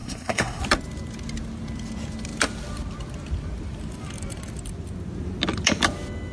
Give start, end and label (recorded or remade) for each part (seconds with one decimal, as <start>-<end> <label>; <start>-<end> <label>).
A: 0.0-0.6 remade; 0.6-6.3 recorded

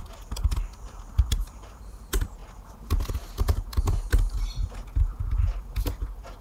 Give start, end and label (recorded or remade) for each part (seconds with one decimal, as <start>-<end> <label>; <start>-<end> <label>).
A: 0.0-6.4 recorded

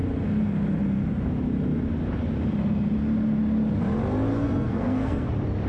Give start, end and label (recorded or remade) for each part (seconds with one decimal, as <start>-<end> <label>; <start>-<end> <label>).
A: 0.0-4.3 recorded; 4.3-5.3 remade; 5.3-5.7 recorded

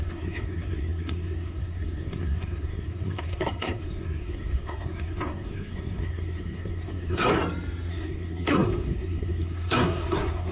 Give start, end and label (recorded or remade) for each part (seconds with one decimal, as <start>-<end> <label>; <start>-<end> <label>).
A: 0.0-7.3 remade; 7.3-7.9 recorded; 7.9-10.5 remade

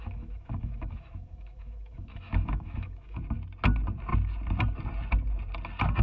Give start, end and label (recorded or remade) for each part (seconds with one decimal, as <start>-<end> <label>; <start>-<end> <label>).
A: 0.0-3.2 remade; 3.2-6.0 recorded

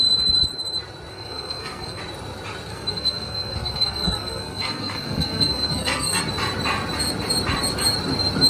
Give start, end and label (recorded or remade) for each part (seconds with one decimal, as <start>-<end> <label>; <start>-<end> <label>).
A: 0.0-1.1 recorded; 1.1-2.0 remade; 2.0-2.7 recorded; 2.7-6.2 remade; 6.2-8.5 recorded

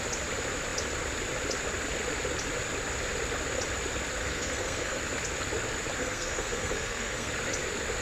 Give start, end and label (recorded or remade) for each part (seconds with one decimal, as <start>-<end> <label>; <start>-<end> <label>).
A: 0.0-4.2 recorded; 4.2-5.0 remade; 5.0-6.0 recorded; 6.0-7.3 remade; 7.3-8.0 recorded